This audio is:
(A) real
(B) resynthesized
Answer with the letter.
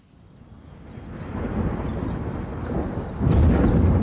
A